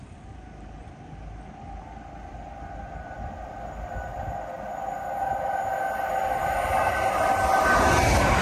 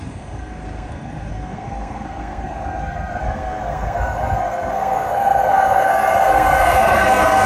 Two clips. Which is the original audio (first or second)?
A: first